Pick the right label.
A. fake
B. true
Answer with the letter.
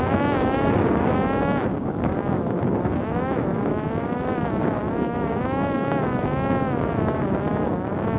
A